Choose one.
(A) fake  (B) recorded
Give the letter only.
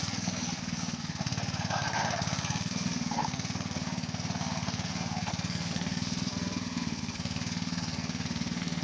A